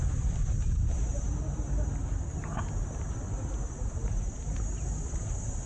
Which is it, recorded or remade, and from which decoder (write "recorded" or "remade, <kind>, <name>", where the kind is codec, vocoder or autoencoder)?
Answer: recorded